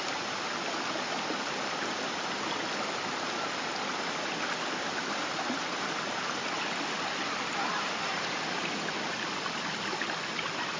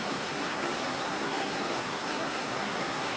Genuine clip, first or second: first